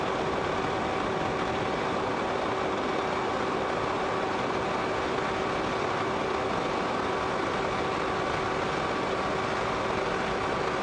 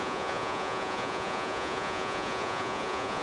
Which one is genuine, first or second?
first